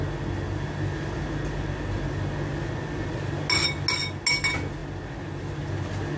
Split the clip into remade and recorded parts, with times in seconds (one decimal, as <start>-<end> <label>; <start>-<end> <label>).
0.0-6.2 recorded